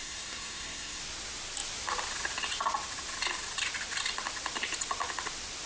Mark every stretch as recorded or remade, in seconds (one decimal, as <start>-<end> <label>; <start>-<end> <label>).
0.0-1.0 remade; 1.0-5.7 recorded